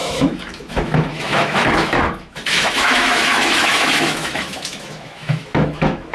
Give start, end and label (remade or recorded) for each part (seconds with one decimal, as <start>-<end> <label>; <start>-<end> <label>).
0.0-6.1 remade